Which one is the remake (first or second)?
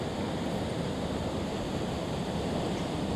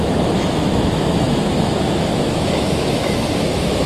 second